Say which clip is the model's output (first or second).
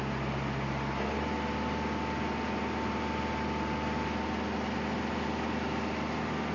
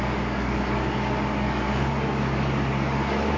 second